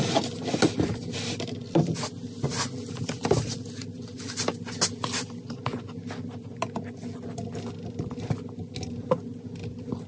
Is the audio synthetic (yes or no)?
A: no